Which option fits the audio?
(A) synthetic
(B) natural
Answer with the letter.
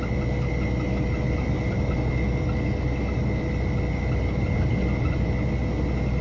B